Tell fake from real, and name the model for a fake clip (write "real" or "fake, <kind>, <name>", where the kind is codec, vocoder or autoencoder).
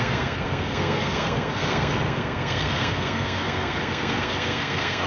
fake, codec, SNAC